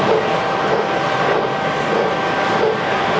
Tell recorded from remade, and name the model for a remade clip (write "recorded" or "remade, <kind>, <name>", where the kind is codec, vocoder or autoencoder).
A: recorded